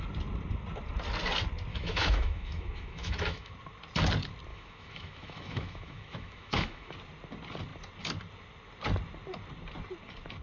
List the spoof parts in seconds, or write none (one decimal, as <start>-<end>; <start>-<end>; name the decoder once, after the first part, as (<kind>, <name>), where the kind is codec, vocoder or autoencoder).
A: 1.7-3.5 (autoencoder, DAC-VAE); 4.5-6.9